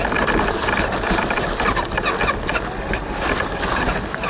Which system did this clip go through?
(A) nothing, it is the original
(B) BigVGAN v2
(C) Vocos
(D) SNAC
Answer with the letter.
A